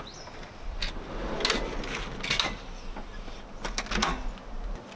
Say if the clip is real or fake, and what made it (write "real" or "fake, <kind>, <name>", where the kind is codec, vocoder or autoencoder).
real